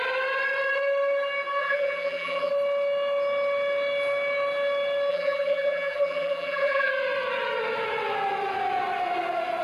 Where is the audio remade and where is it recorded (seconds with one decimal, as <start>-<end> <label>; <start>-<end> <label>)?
0.0-1.6 recorded; 1.6-2.5 remade; 2.5-5.1 recorded; 5.1-6.9 remade; 6.9-9.6 recorded